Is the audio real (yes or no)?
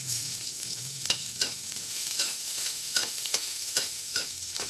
no